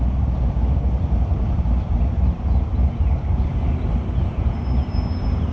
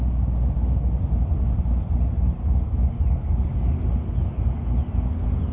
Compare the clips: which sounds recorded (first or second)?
second